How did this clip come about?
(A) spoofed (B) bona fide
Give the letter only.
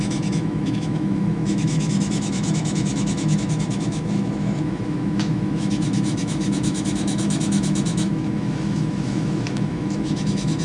A